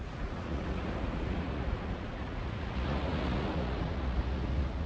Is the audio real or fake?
fake